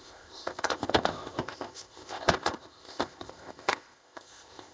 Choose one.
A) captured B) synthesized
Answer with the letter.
B